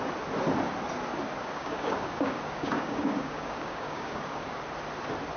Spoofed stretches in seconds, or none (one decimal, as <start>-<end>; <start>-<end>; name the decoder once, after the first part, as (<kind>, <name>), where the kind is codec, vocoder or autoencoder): 1.4-4.6 (codec, DAC)